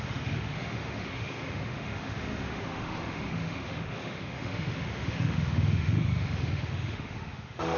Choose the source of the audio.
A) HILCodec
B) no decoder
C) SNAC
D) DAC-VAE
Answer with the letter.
D